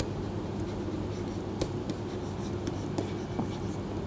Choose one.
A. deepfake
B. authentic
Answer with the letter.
B